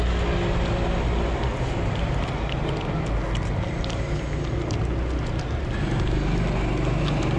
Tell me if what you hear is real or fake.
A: real